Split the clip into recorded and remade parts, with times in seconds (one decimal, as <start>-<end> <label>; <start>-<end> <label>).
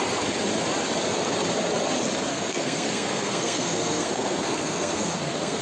0.0-2.3 recorded; 2.3-5.6 remade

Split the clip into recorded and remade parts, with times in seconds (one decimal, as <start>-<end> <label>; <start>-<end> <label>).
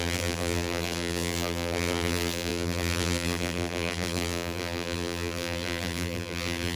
0.0-6.8 remade